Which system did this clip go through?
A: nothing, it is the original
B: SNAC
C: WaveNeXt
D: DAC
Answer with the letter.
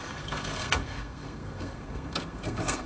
B